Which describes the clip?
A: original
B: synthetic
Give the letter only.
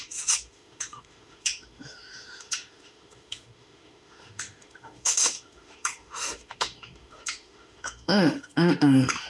B